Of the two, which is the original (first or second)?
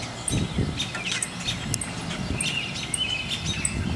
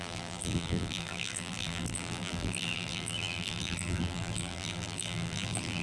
first